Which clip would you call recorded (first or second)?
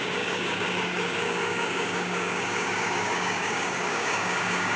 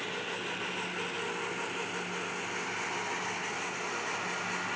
second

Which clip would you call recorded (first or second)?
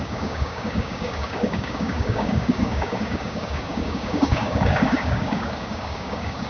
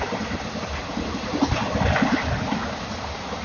second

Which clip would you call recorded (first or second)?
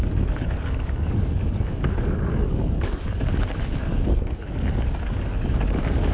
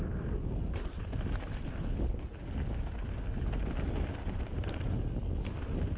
second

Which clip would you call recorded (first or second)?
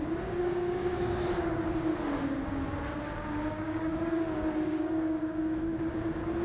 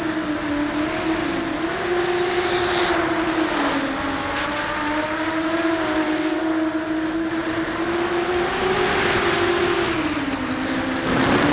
second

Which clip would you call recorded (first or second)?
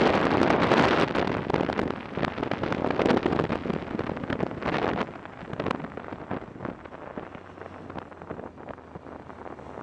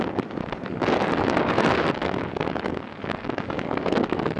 first